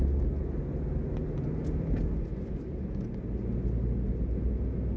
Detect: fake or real real